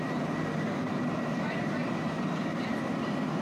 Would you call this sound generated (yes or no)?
no